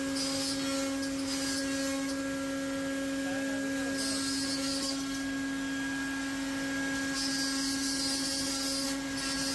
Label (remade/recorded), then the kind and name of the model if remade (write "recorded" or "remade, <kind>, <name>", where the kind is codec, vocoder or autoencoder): recorded